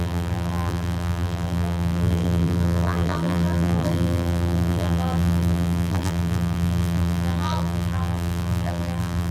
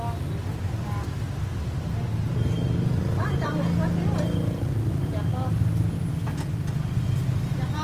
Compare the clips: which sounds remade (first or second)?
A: first